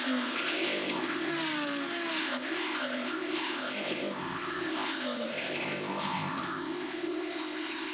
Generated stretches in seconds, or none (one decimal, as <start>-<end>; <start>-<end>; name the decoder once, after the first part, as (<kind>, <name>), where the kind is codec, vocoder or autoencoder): 0.0-1.3 (codec, ZipCodec); 2.2-7.9